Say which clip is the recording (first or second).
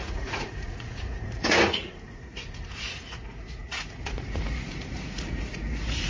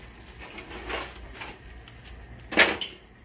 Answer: second